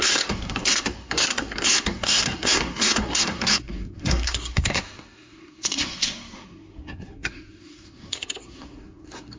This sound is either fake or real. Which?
fake